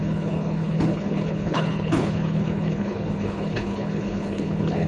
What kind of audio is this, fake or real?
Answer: fake